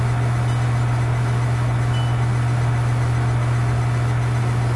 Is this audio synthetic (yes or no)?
no